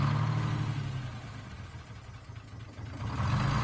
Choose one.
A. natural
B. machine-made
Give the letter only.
A